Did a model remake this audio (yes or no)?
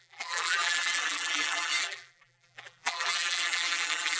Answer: yes